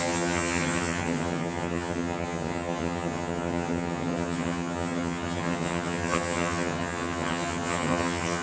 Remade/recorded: remade